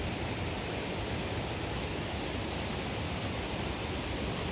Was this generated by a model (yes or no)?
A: no